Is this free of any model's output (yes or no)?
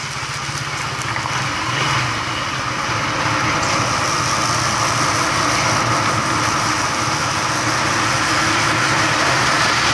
yes